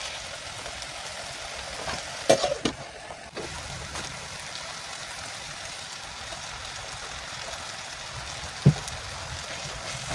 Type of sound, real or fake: real